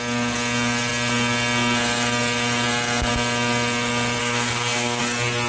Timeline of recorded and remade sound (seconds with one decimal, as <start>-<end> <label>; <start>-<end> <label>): 0.0-4.2 recorded; 4.2-5.0 remade; 5.0-5.5 recorded